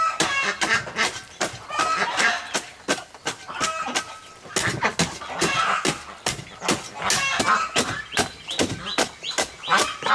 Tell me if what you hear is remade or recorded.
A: recorded